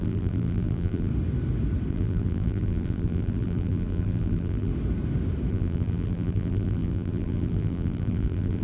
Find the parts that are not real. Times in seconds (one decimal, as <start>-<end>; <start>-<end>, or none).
0.0-1.1; 1.9-4.7; 5.5-8.6